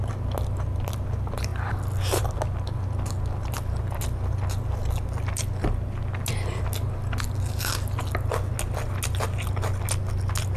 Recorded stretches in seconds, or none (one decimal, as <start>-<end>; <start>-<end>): 0.0-10.6